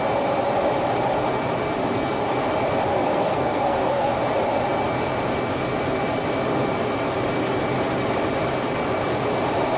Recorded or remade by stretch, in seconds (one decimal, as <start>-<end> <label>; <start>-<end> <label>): 0.0-2.9 recorded; 2.9-4.1 remade; 4.1-9.8 recorded